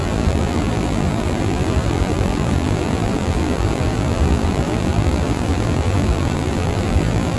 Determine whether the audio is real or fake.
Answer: fake